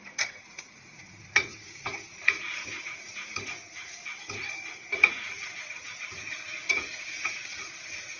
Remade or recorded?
remade